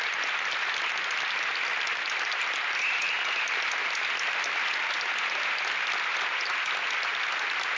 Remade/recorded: recorded